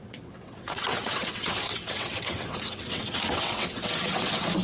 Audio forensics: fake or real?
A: fake